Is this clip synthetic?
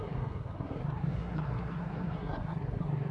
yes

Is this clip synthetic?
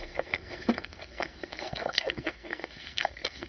yes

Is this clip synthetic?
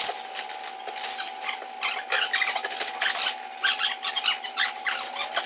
no